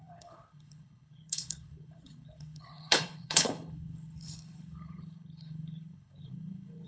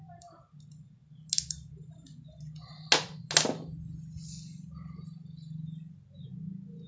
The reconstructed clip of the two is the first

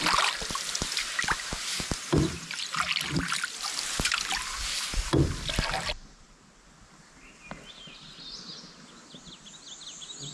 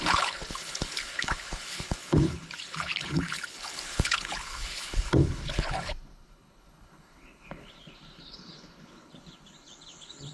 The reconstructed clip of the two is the second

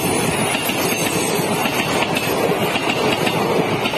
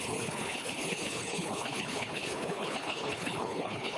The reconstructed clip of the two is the second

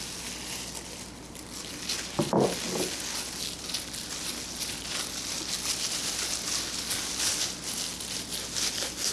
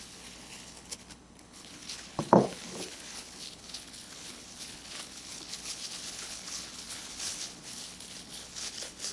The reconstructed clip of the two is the second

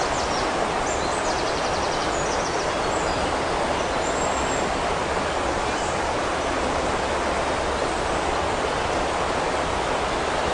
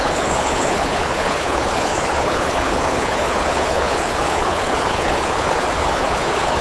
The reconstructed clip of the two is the second